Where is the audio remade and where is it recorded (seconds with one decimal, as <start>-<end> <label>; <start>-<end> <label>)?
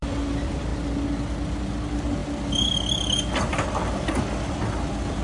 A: 0.0-0.7 remade; 0.7-1.8 recorded; 1.8-2.2 remade; 2.2-3.3 recorded; 3.3-5.2 remade